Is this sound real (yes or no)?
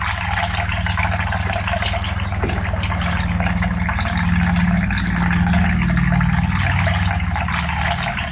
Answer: yes